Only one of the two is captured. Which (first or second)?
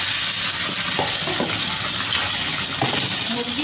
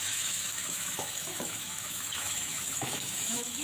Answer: first